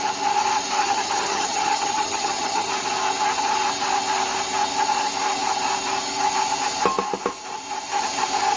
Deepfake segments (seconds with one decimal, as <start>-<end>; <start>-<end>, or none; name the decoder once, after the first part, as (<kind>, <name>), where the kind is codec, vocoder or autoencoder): 0.8-2.7 (vocoder, HiFi-GAN)